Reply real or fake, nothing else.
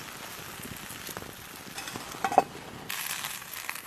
real